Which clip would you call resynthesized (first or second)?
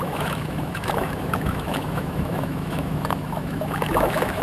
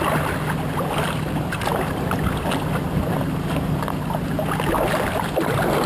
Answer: first